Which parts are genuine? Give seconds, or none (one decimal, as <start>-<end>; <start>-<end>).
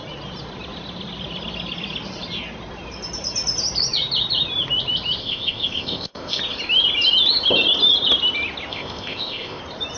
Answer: 0.0-5.2; 6.4-8.7; 9.6-10.0